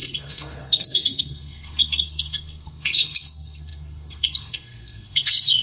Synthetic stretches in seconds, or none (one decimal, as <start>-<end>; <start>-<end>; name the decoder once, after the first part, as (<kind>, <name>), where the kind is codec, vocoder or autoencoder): 0.0-5.6 (codec, SNAC)